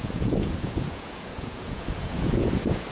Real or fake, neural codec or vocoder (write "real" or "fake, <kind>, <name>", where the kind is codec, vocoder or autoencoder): fake, vocoder, Vocos